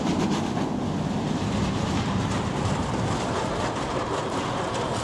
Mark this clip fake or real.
real